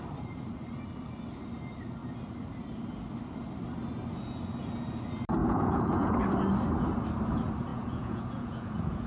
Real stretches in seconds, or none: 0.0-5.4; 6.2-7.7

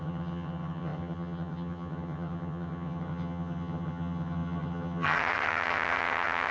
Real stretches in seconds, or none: none